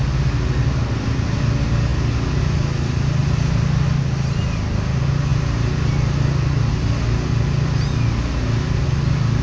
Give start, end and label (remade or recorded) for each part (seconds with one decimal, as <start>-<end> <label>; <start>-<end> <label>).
0.0-9.4 recorded